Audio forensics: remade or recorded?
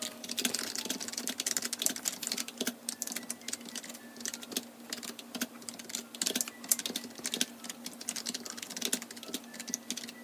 recorded